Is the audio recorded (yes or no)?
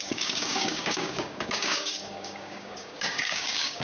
no